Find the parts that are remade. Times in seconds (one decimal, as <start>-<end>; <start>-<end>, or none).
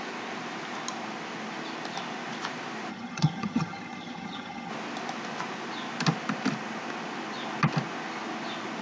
2.9-4.7